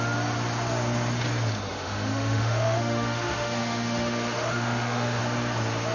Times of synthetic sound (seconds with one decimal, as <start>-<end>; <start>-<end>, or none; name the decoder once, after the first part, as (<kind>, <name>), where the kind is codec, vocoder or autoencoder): 1.7-5.2 (autoencoder, DAC-VAE)